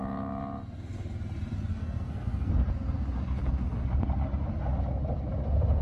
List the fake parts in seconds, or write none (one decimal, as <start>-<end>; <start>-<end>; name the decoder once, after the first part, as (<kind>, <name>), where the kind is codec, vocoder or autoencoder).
1.7-2.5 (codec, SNAC)